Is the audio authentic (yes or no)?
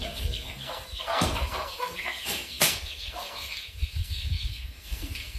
no